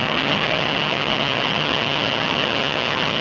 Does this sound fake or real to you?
fake